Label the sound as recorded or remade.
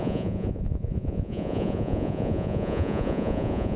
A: remade